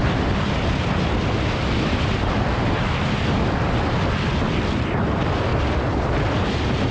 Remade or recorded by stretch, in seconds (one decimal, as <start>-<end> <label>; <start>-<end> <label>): 0.0-3.9 remade; 3.9-5.5 recorded; 5.5-6.4 remade; 6.4-6.9 recorded